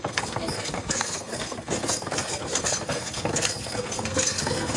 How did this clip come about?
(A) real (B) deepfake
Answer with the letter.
B